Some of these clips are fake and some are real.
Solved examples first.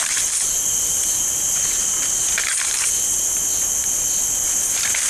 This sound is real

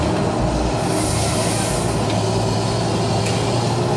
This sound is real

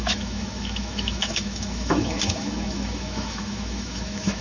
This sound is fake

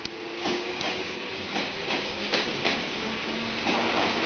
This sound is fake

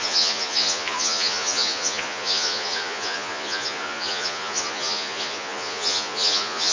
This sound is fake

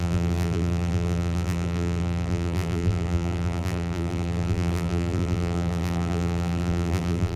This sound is fake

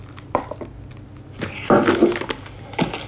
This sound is real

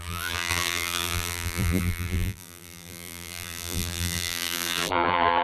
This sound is fake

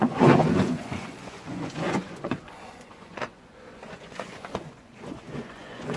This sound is fake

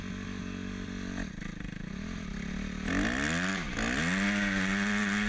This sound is real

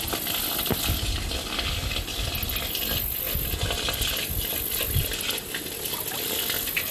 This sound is real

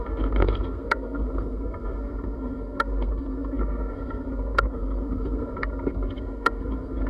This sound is fake